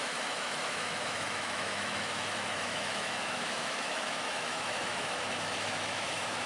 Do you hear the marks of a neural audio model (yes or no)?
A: yes